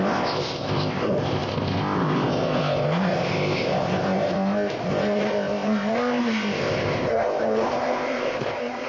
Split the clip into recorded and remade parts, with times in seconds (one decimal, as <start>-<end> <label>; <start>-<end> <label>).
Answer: 0.0-8.9 remade